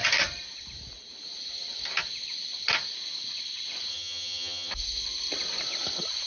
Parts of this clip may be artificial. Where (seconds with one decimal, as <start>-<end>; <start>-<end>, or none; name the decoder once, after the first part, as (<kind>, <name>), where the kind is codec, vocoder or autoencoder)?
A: 3.9-4.7 (vocoder, HiFi-GAN)